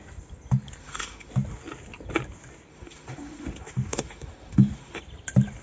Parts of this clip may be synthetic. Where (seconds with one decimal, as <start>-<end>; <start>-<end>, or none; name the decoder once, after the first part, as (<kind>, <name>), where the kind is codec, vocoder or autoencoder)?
0.8-1.3 (autoencoder, DAC-VAE); 2.7-5.0